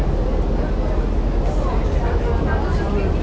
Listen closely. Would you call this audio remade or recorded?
recorded